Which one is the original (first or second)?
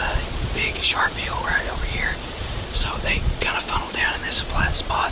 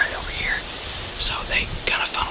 second